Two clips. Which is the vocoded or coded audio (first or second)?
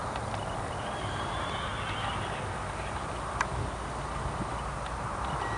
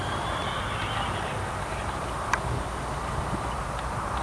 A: second